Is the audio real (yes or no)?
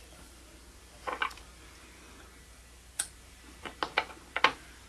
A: yes